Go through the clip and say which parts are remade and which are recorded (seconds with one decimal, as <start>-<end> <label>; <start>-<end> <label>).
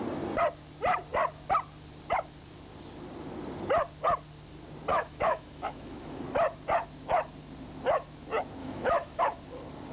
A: 0.0-4.9 recorded; 4.9-6.2 remade; 6.2-8.6 recorded; 8.6-9.2 remade; 9.2-9.9 recorded